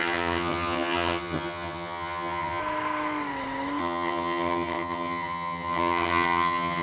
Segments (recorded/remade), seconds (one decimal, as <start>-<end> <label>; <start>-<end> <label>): 0.0-2.6 remade; 2.6-3.8 recorded; 3.8-6.8 remade